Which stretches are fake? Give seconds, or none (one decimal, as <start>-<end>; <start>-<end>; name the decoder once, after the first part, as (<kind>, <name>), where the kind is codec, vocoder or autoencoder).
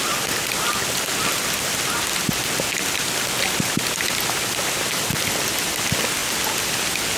none